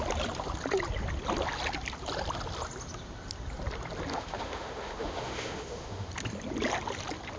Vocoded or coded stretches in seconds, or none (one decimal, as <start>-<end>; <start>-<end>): 4.1-6.1